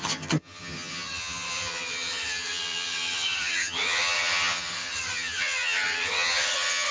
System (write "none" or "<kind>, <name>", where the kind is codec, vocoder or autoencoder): vocoder, HiFi-GAN